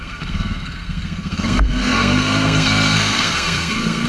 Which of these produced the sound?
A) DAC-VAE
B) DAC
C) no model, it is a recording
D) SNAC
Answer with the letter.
D